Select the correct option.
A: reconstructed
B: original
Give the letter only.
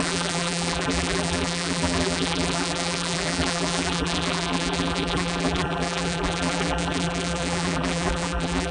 A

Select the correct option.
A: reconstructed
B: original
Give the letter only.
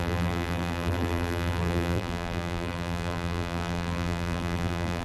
A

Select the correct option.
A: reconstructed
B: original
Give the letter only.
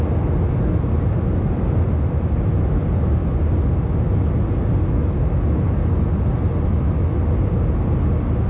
B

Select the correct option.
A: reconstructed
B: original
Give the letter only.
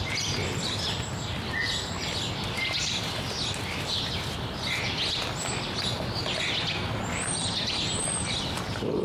B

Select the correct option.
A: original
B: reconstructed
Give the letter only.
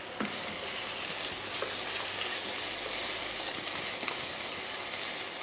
A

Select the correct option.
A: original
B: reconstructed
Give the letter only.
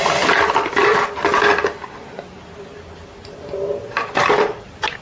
B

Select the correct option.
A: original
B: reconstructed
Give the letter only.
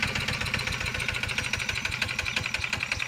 A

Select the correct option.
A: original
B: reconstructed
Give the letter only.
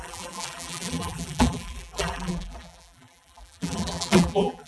B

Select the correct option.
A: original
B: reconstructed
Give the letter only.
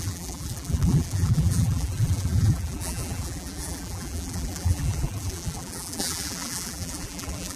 B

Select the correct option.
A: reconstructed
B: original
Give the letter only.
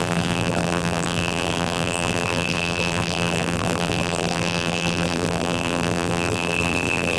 A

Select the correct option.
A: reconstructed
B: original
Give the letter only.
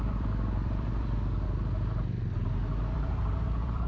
A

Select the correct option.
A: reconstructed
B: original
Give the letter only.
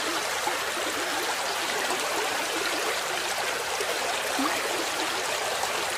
A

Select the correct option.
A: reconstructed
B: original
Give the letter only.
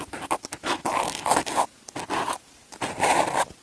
B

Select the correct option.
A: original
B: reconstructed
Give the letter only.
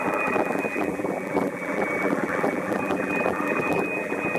B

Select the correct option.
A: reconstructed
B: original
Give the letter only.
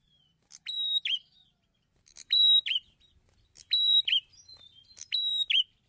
A